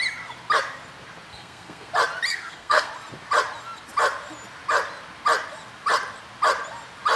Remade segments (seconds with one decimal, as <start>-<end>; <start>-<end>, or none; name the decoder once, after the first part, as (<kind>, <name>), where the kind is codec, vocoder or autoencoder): 1.3-1.9 (codec, SNAC); 2.3-2.9